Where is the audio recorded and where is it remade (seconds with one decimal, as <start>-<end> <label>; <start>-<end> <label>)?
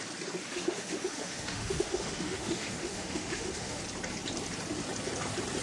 0.0-0.4 recorded; 0.4-3.8 remade; 3.8-5.6 recorded